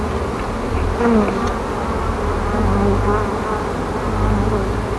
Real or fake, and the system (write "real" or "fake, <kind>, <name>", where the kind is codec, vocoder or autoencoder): real